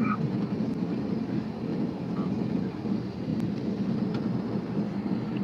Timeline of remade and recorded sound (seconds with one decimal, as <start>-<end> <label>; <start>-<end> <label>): 0.0-1.7 recorded; 1.7-2.3 remade; 2.3-3.3 recorded; 3.3-4.2 remade; 4.2-5.4 recorded